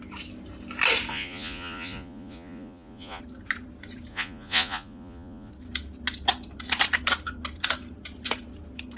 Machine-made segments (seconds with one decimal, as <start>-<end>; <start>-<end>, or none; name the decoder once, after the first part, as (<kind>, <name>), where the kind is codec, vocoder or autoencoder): 1.1-3.2 (vocoder, Vocos); 4.1-5.5